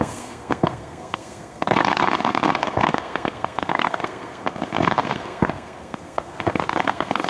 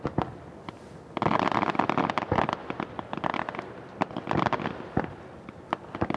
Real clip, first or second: second